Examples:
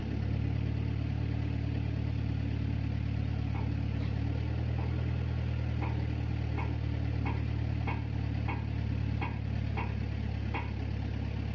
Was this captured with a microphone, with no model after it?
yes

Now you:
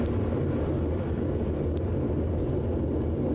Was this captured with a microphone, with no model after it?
yes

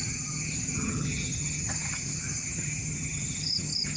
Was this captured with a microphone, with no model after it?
no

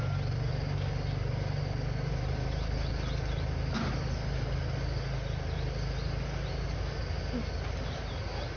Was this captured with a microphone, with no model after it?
yes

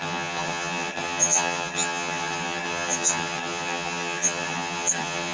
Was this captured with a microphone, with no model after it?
no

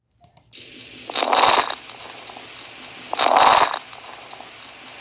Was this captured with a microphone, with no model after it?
yes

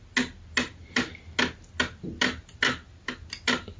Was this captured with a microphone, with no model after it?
yes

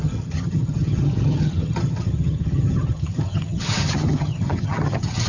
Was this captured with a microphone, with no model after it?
no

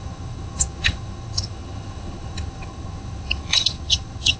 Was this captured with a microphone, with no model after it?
no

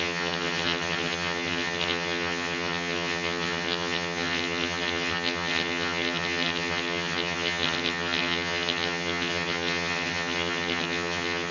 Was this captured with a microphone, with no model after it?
no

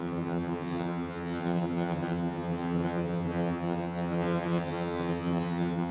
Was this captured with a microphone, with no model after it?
no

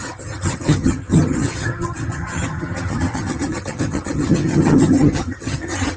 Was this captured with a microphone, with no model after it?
no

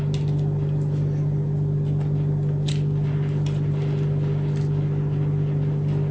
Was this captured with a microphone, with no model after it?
yes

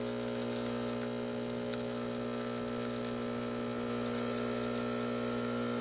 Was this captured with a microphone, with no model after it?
yes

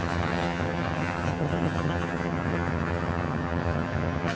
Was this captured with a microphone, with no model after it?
no